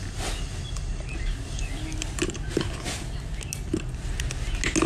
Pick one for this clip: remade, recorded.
recorded